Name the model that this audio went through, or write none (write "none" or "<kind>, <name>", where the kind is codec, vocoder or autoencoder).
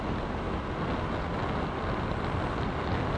none